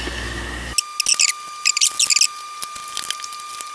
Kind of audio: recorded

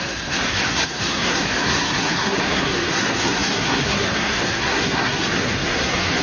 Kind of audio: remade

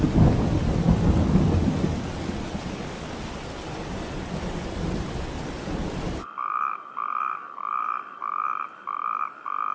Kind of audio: recorded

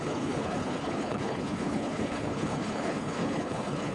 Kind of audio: remade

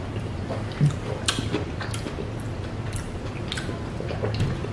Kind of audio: recorded